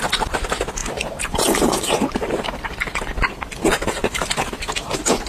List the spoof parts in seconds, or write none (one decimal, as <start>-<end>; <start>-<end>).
0.8-3.0; 3.7-4.5